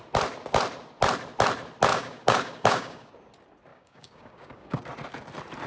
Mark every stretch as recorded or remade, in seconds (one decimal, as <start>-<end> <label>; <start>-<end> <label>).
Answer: 0.0-1.9 recorded; 1.9-3.1 remade; 3.1-3.7 recorded; 3.7-4.8 remade; 4.8-5.7 recorded